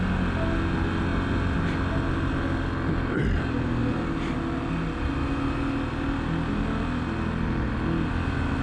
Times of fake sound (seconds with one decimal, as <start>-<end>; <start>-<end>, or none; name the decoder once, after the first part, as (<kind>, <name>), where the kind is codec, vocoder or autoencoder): none